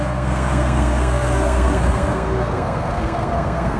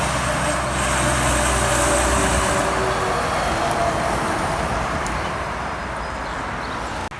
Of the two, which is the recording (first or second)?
second